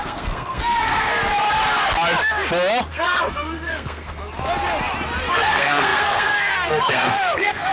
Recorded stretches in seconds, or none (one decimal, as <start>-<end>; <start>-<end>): 1.1-2.9; 4.2-5.3